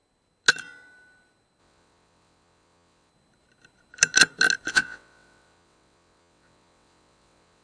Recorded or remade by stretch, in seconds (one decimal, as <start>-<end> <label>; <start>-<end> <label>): 0.0-1.6 recorded; 1.6-3.1 remade; 3.1-4.7 recorded; 4.7-7.6 remade